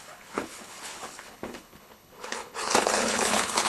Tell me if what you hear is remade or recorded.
remade